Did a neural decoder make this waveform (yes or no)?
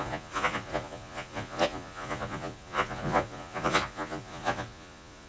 yes